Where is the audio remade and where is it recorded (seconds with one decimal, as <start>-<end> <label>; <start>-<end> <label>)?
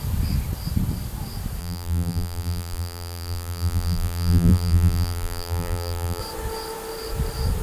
0.0-1.6 recorded; 1.6-6.2 remade; 6.2-7.6 recorded